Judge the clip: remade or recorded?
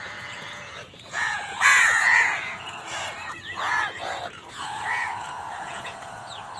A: remade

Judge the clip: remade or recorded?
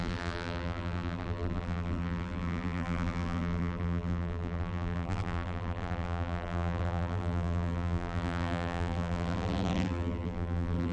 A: remade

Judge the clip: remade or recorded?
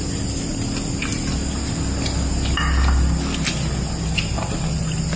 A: recorded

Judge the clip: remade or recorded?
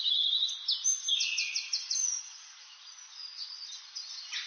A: recorded